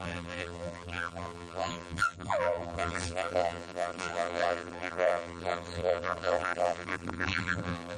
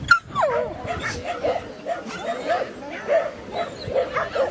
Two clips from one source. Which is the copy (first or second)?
first